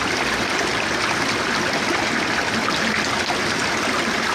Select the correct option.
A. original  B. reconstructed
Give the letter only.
A